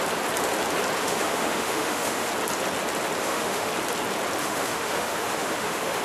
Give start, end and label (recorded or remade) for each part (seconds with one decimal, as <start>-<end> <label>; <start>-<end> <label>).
0.0-1.0 recorded; 1.0-2.3 remade; 2.3-3.2 recorded; 3.2-3.7 remade; 3.7-4.4 recorded; 4.4-6.0 remade

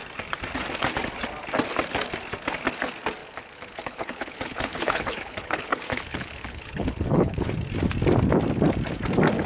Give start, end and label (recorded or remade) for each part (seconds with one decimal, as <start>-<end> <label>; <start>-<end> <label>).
0.0-3.2 recorded; 3.2-7.5 remade; 7.5-9.5 recorded

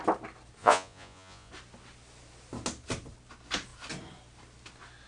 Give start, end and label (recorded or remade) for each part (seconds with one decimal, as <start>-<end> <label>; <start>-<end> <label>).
0.0-0.6 recorded; 0.6-1.5 remade; 1.5-5.1 recorded

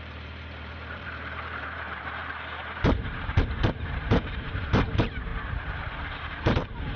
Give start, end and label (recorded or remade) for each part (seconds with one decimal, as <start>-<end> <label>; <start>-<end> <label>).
0.0-5.3 remade; 5.3-6.2 recorded; 6.2-7.0 remade